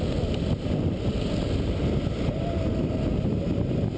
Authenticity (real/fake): real